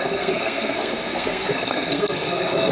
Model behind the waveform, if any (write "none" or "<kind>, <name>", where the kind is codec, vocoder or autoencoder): codec, SNAC